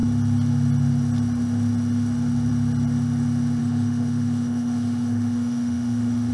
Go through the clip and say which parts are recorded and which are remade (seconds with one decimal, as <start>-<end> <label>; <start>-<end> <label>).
0.0-3.6 recorded; 3.6-6.3 remade